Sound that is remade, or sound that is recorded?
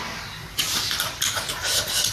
remade